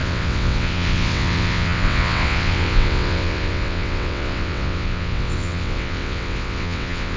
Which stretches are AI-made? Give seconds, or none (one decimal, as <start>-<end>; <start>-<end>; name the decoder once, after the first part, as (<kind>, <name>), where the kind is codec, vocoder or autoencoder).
0.0-7.2 (vocoder, WaveNeXt)